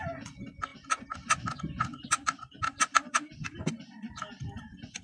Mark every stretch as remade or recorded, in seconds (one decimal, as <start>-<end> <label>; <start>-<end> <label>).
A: 0.0-5.0 remade